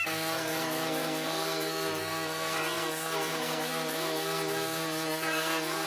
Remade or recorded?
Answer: remade